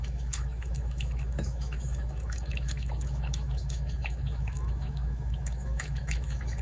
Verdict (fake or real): fake